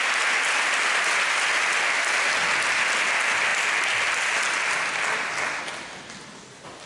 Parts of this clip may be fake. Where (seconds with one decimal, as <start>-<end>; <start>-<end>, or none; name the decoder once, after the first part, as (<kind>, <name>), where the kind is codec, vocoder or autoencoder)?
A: none